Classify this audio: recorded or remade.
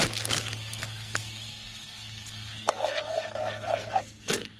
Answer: remade